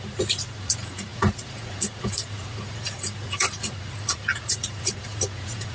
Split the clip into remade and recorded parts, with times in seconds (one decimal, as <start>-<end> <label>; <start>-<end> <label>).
0.0-5.7 remade